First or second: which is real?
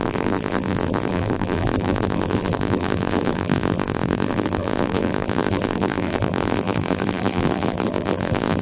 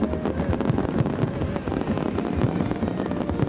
second